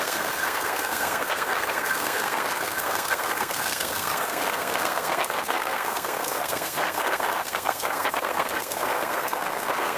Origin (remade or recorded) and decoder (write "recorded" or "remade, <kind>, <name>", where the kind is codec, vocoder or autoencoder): remade, codec, SNAC